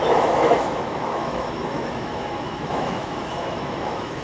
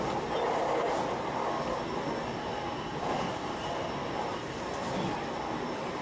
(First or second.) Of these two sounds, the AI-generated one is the first